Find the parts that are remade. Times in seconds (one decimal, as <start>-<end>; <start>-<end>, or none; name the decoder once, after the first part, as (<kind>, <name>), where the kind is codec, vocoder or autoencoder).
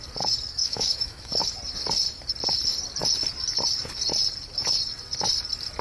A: 0.6-1.3 (autoencoder, DAC-VAE)